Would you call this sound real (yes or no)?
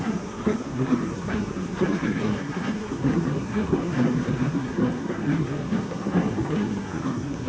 no